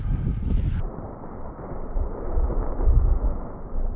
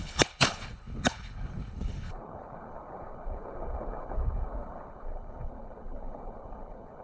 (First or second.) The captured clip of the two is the first